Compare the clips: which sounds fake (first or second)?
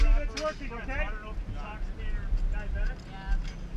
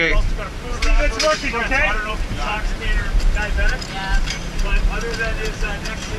second